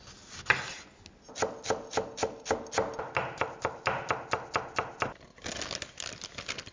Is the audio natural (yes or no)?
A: yes